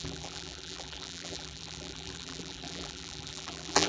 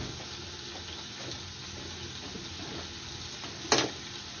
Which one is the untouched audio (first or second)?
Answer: second